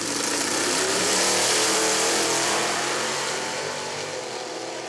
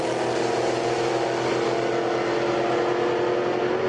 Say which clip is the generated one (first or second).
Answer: first